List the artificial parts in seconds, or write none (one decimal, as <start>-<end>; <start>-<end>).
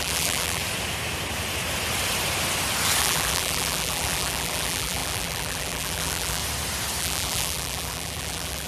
0.0-0.6; 3.0-6.4; 7.0-8.7